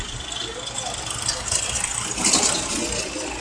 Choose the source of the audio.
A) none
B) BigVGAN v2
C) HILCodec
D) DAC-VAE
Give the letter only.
A